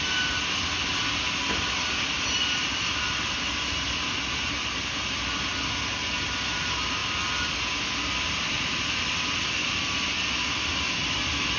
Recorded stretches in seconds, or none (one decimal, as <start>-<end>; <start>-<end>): 0.0-11.6